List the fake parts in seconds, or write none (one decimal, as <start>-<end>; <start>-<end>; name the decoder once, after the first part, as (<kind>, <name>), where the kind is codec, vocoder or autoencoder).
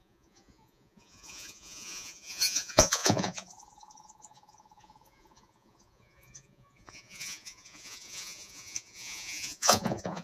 0.0-10.2 (vocoder, Vocos)